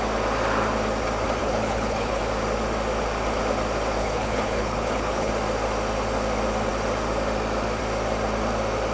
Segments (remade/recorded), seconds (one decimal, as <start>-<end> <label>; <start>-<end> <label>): 0.0-1.4 recorded; 1.4-2.2 remade; 2.2-4.0 recorded; 4.0-5.3 remade; 5.3-8.9 recorded